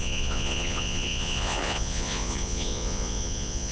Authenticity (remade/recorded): remade